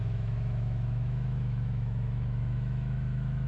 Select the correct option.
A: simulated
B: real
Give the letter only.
A